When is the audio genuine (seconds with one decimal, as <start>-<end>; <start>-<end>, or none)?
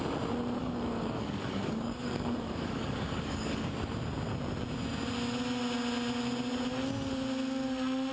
0.0-0.6; 3.7-8.1